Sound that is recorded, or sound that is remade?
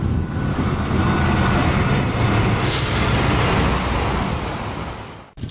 recorded